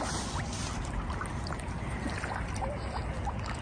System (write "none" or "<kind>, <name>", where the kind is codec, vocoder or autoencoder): none